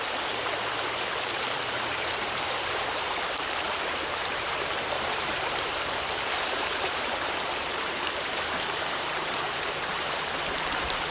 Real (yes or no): no